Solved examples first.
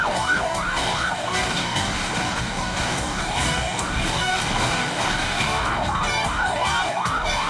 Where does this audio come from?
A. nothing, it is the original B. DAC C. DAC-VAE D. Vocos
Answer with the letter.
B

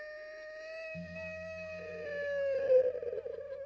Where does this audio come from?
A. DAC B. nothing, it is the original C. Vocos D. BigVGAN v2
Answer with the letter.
B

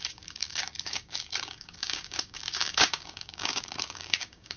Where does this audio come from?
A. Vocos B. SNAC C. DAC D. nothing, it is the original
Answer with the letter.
C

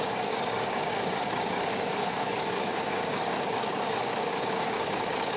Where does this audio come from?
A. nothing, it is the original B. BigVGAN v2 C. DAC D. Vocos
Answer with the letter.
C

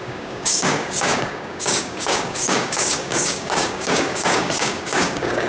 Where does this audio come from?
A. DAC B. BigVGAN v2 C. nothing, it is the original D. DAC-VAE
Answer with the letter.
A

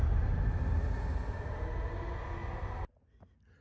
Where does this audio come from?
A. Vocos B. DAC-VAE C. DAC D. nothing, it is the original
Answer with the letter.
D